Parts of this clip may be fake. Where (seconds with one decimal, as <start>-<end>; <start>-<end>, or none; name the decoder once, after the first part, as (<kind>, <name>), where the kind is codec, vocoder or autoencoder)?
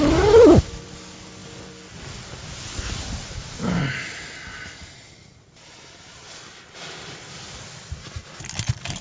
none